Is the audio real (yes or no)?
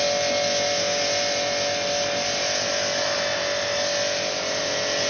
yes